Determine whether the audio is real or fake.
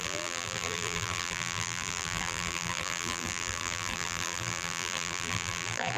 fake